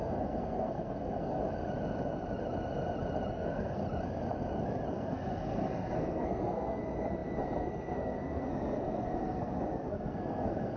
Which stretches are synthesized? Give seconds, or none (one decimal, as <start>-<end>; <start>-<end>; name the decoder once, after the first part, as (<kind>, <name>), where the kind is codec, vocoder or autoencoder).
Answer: 0.0-1.4 (codec, SNAC); 3.3-3.8; 4.9-10.8